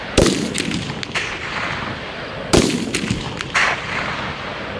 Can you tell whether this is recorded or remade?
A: recorded